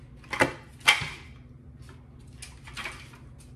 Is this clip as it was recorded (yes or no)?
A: yes